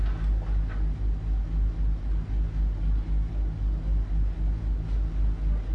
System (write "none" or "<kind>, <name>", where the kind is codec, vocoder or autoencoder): none